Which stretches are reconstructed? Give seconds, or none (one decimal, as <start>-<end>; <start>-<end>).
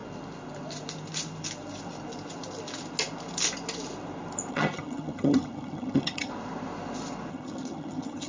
4.5-6.3; 7.3-8.3